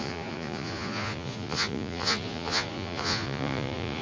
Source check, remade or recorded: remade